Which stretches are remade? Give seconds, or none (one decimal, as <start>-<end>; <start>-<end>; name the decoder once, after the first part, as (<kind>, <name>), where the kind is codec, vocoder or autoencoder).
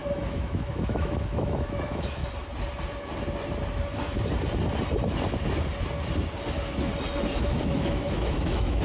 0.0-2.2 (autoencoder, DAC-VAE); 7.4-8.8